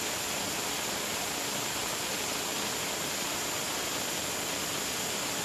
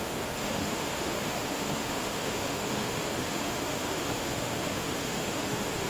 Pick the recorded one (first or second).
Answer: first